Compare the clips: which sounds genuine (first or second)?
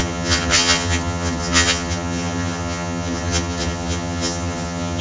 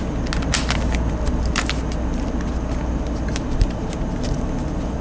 second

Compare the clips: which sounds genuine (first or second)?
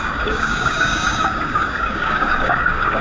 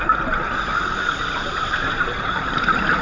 second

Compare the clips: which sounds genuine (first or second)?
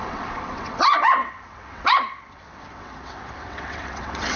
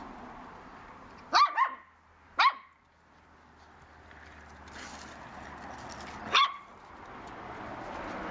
second